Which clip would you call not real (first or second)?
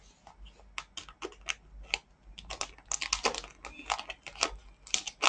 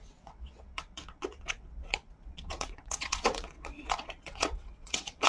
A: second